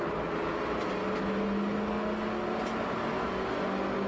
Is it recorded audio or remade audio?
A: recorded